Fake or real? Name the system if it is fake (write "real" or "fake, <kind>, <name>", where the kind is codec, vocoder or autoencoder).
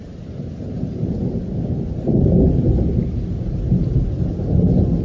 real